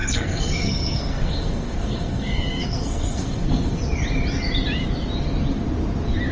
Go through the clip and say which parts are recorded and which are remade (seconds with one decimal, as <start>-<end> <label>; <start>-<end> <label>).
0.0-3.8 remade; 3.8-6.3 recorded